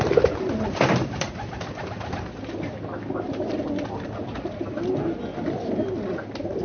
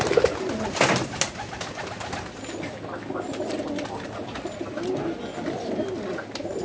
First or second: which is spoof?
first